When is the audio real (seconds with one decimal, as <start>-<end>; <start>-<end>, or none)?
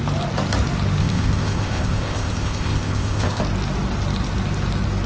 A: 0.0-1.0; 3.4-5.1